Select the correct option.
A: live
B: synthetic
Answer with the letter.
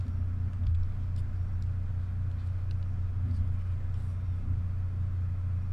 A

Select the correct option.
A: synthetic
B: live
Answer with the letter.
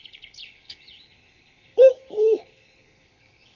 A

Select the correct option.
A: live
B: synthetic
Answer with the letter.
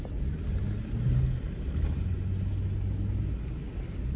A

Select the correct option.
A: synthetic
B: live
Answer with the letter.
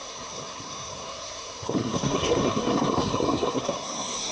A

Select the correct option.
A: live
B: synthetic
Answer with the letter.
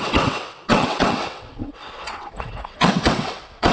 B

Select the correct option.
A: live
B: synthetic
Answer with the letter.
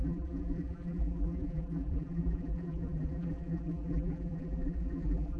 B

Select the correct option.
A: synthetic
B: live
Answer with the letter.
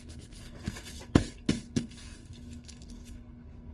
A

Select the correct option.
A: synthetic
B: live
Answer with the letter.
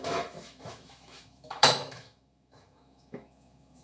A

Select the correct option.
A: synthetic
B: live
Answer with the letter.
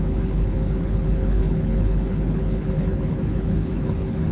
A